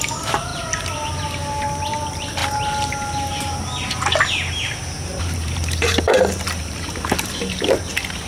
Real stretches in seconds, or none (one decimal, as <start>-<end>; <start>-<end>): 0.0-0.5; 1.1-5.1; 7.9-8.3